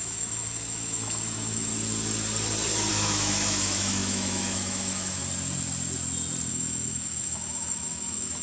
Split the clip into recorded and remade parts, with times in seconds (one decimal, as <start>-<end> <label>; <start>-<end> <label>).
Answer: 0.0-1.7 remade; 1.7-2.9 recorded; 2.9-5.2 remade; 5.2-6.5 recorded; 6.5-8.4 remade